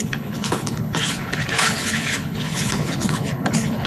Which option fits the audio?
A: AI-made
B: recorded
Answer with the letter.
A